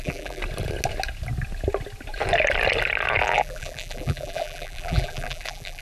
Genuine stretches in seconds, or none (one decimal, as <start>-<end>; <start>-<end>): 0.4-3.2